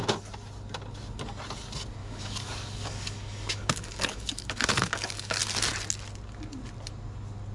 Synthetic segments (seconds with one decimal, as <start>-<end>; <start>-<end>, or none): 2.0-5.4

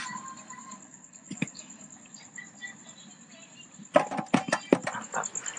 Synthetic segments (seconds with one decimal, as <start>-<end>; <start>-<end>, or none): 0.6-2.2

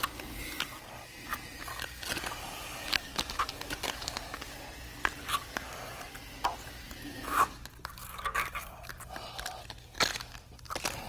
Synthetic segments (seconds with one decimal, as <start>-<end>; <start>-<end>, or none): 2.4-4.5; 5.2-6.1; 7.1-8.9

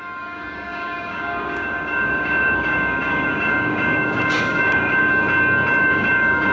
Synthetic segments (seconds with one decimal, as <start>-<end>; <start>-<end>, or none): 0.0-5.1; 5.8-6.5

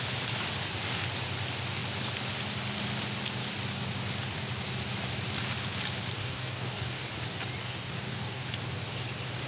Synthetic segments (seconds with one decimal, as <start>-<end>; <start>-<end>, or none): 6.2-7.1; 7.6-8.5

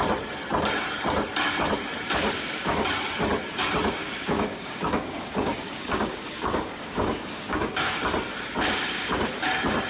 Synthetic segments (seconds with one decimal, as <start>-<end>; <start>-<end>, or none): 4.0-8.0

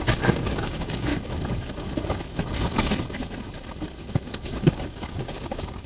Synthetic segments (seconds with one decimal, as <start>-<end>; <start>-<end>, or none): 0.0-1.1; 4.6-5.9

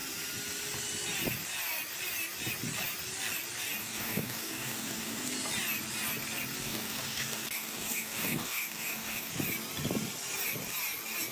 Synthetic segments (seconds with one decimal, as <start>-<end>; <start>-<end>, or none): 3.8-5.3; 6.6-9.3